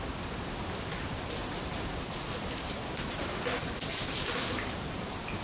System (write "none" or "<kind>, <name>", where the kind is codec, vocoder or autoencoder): none